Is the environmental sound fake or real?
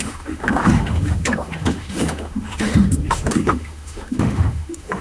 fake